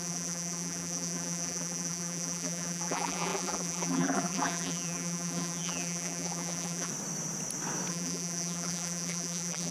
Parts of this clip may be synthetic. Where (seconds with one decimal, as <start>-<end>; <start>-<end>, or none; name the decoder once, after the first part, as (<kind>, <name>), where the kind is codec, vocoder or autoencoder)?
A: 0.0-6.9 (vocoder, BigVGAN v2); 7.9-9.7